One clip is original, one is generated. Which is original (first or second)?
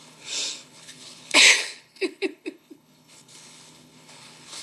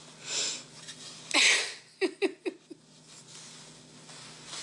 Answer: second